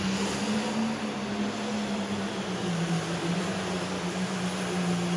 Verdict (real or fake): real